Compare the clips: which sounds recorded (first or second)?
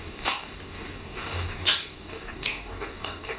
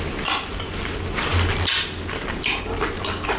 second